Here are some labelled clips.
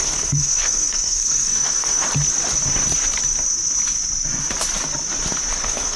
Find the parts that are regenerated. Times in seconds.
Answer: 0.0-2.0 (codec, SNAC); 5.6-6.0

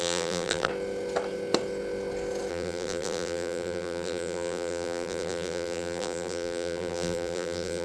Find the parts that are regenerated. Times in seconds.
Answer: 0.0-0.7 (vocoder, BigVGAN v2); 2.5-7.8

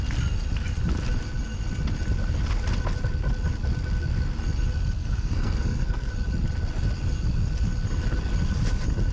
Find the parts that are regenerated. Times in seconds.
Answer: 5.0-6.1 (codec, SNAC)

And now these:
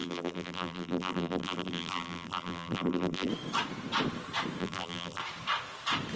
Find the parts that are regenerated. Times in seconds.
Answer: 0.0-3.3 (vocoder, BigVGAN v2); 4.6-5.2

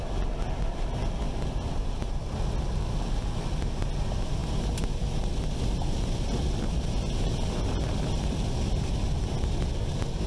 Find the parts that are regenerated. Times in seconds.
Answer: none

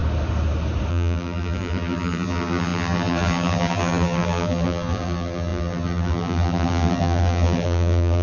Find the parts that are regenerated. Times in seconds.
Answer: 0.9-8.2 (vocoder, BigVGAN v2)

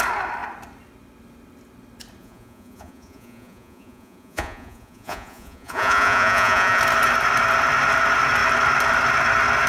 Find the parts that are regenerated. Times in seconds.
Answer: 2.2-6.8 (vocoder, Vocos)